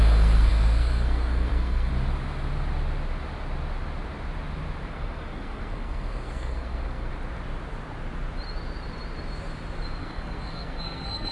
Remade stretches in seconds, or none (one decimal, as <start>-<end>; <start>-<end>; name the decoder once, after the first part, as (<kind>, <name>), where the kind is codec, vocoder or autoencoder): 0.0-1.9 (codec, SNAC); 4.9-7.1; 10.0-11.3